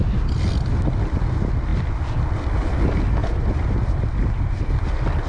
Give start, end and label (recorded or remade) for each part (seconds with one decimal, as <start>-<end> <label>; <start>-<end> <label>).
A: 0.0-5.3 recorded

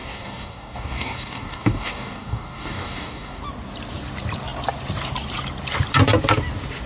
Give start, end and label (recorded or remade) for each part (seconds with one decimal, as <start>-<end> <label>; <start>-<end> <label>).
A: 0.0-3.4 remade; 3.4-6.9 recorded

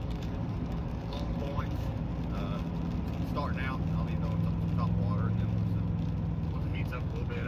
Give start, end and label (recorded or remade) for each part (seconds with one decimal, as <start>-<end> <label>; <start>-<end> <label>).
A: 0.0-2.1 remade; 2.1-6.5 recorded; 6.5-7.5 remade